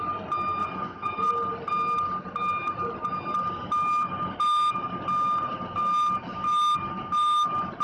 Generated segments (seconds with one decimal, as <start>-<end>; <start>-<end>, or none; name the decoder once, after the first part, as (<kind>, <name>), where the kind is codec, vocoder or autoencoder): 0.6-1.3 (vocoder, Vocos)